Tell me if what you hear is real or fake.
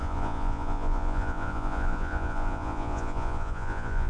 fake